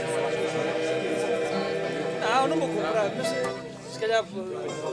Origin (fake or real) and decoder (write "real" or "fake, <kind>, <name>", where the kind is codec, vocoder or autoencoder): real